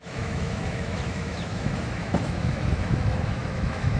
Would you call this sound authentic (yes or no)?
no